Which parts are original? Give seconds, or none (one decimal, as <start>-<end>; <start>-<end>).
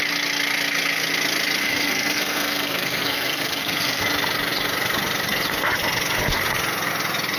0.0-1.6; 4.0-7.4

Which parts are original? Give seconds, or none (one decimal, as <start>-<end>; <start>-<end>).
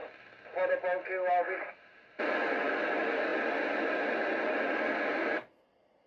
0.0-6.1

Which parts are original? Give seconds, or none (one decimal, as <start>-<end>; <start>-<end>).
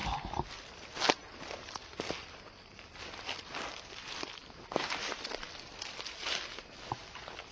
0.0-7.5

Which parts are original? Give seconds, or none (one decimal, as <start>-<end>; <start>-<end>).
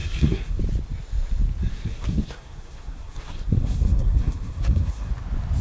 0.6-1.7; 5.1-5.6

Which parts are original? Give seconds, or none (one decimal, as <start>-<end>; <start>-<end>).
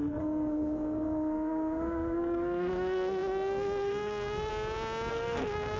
4.5-5.1